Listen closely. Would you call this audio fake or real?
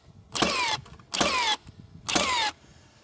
real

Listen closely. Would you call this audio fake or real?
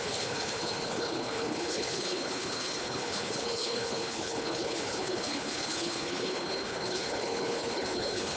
fake